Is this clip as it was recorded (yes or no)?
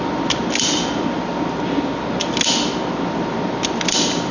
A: yes